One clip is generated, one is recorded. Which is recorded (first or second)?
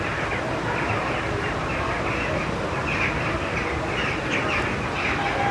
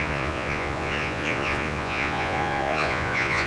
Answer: first